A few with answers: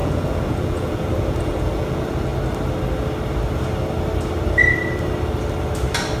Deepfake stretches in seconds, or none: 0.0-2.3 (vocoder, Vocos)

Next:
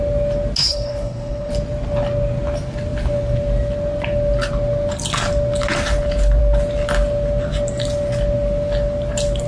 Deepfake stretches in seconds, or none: 0.6-1.5 (codec, HILCodec)

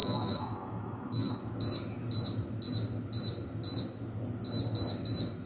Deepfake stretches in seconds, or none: 0.0-1.4 (autoencoder, DAC-VAE)